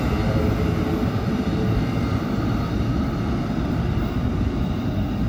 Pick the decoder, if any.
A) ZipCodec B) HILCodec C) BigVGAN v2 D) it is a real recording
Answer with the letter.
D